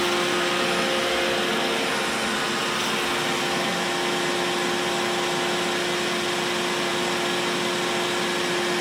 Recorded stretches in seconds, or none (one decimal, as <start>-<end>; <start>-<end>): 0.0-8.8